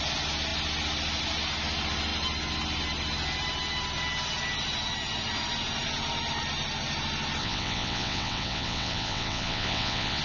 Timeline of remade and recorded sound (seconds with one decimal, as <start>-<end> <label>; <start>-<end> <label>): 0.0-7.4 recorded; 7.4-10.2 remade